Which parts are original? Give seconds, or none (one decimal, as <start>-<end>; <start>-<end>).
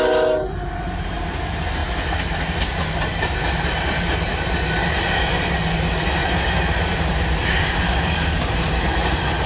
1.8-2.8; 6.2-7.7